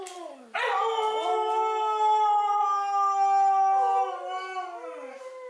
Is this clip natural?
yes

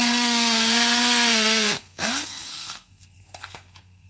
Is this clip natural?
no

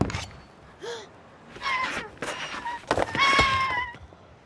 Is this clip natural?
yes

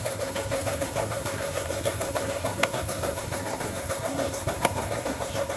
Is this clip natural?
no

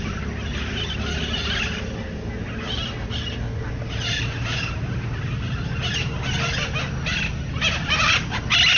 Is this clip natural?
yes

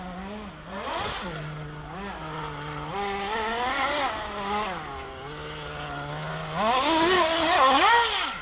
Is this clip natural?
yes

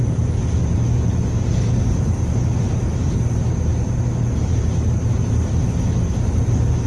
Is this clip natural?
yes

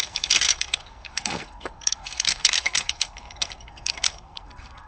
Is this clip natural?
no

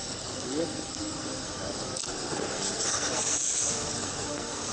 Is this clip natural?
no